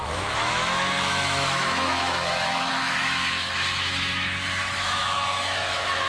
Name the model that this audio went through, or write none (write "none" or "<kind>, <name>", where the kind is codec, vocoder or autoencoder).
autoencoder, DAC-VAE